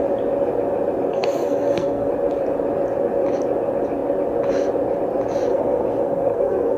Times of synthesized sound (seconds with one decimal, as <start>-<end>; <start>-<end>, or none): 1.1-2.1; 5.5-6.8